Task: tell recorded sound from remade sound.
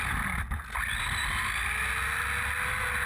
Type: recorded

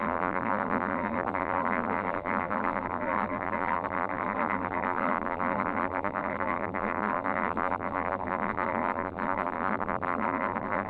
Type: remade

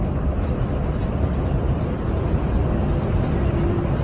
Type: remade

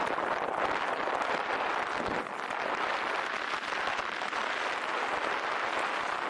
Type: recorded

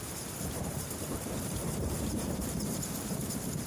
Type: remade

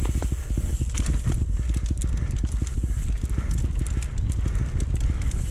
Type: recorded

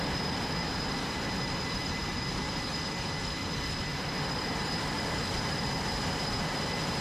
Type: remade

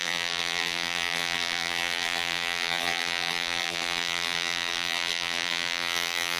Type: remade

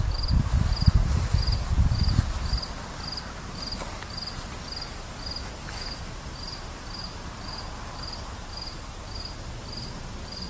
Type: recorded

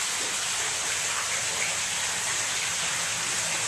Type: recorded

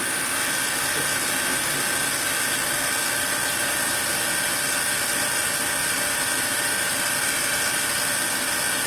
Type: recorded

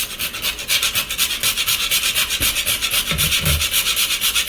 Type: recorded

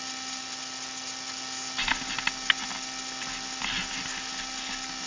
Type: recorded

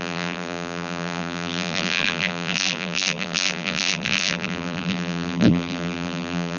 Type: remade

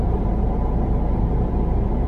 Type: remade